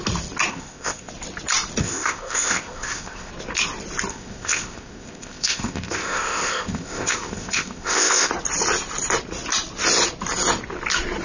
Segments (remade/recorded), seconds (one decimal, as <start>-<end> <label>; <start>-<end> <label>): 0.0-0.5 recorded; 0.5-1.1 remade; 1.1-1.8 recorded; 1.8-3.3 remade; 3.3-4.1 recorded; 4.1-8.3 remade; 8.3-11.2 recorded